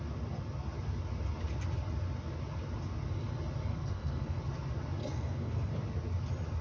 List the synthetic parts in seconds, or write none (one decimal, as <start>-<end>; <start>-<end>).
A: 3.7-4.4; 5.0-5.7